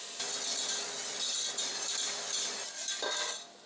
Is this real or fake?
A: real